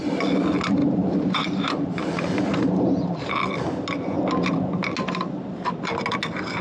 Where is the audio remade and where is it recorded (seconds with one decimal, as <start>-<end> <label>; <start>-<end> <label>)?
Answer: 0.0-0.8 recorded; 0.8-3.3 remade; 3.3-6.6 recorded